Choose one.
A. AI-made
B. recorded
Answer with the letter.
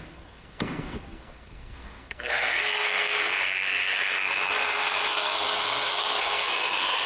A